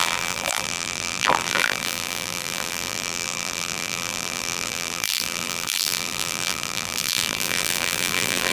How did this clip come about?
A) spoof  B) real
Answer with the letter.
A